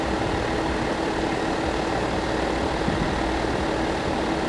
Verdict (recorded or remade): recorded